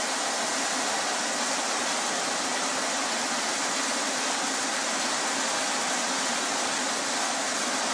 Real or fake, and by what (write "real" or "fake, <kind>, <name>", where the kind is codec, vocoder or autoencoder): real